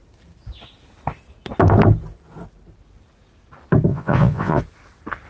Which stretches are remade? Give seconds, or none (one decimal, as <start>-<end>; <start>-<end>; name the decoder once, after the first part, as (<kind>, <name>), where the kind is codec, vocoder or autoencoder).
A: 3.9-4.6 (vocoder, Vocos)